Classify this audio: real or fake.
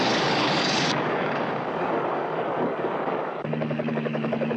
fake